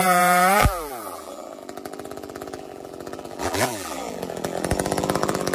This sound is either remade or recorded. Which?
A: remade